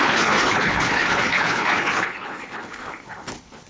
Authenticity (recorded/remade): remade